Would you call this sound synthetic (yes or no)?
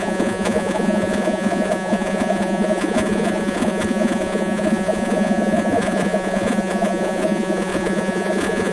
yes